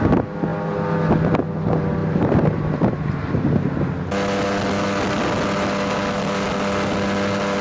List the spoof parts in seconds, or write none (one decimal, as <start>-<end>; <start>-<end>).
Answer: 2.0-3.9